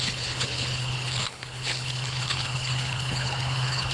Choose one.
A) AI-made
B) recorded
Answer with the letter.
A